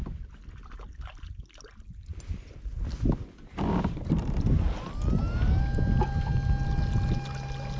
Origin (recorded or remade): recorded